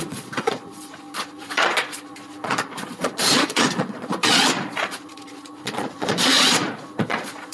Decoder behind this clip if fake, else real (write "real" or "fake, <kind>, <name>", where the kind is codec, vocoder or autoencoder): fake, vocoder, Vocos